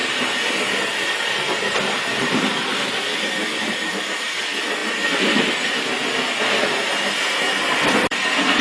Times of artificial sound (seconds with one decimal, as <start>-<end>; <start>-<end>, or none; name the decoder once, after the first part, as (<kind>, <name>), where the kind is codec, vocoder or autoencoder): none